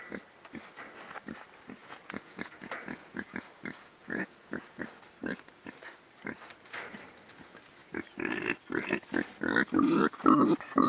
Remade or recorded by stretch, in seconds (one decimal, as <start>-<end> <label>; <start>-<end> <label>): 0.0-1.8 recorded; 1.8-4.8 remade; 4.8-10.9 recorded